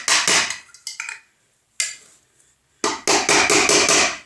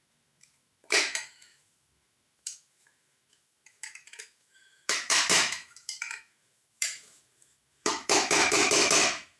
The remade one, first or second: second